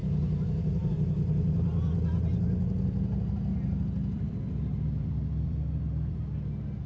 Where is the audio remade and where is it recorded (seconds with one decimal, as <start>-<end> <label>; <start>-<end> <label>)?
0.0-0.9 remade; 0.9-3.5 recorded; 3.5-6.2 remade; 6.2-6.9 recorded